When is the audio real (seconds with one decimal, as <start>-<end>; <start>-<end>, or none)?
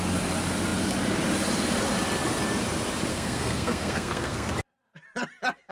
0.0-3.1; 4.5-5.7